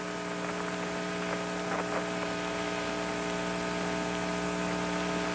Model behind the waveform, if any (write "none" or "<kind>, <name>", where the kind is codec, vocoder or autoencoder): none